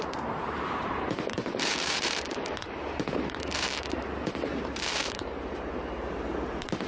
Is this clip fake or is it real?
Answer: fake